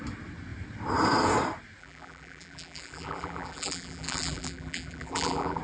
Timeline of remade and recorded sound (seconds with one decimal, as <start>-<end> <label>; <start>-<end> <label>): 0.0-1.8 recorded; 1.8-5.6 remade